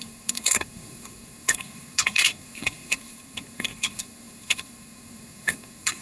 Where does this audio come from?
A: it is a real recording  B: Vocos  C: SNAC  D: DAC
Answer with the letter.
C